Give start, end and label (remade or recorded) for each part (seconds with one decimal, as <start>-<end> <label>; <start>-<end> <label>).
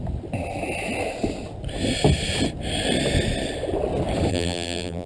0.0-4.3 recorded; 4.3-5.1 remade